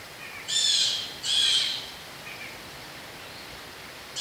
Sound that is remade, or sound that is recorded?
recorded